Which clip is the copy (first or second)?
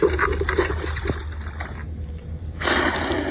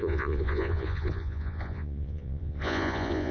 second